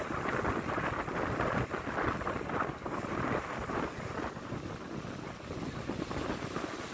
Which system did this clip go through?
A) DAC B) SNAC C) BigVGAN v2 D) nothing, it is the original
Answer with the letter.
D